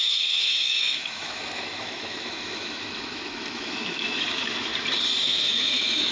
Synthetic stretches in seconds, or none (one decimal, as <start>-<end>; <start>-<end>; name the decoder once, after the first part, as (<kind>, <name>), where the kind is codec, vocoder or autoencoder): 0.0-4.7 (autoencoder, DAC-VAE); 5.2-6.1